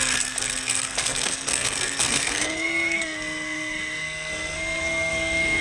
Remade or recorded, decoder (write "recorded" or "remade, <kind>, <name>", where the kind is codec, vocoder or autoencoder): remade, codec, SNAC